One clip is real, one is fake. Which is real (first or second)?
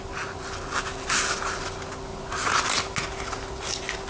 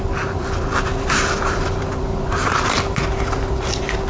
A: first